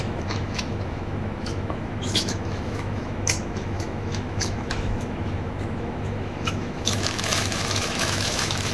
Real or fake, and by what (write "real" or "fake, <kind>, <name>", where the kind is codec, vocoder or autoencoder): fake, autoencoder, DAC-VAE